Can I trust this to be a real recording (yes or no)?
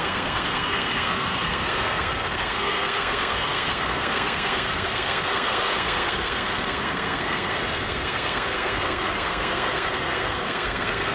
no